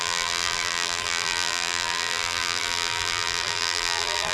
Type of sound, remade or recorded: remade